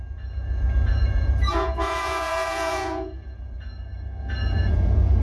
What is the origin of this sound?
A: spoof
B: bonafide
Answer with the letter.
A